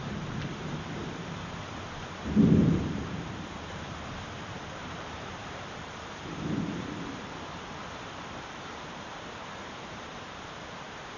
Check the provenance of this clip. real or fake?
fake